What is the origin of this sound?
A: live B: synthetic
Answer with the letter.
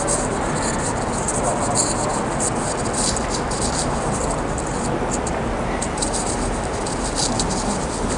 A